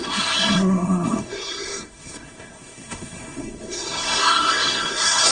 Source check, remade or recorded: remade